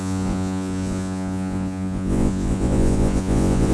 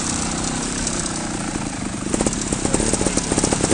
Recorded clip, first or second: second